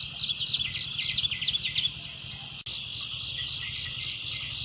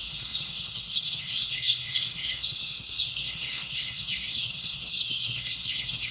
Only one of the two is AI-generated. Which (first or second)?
second